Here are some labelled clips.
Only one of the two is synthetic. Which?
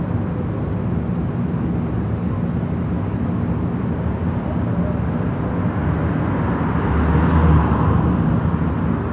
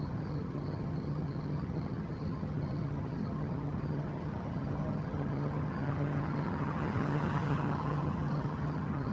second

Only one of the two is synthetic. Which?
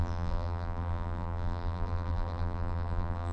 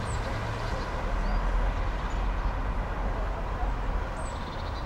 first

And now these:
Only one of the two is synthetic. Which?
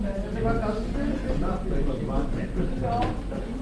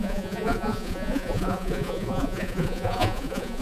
second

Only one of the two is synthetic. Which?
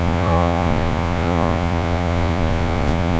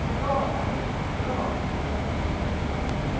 first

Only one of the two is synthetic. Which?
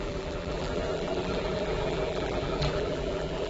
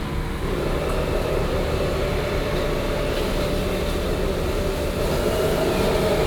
first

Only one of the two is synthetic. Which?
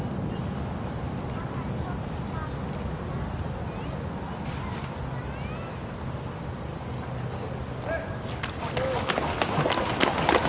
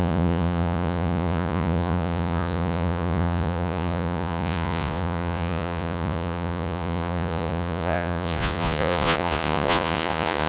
second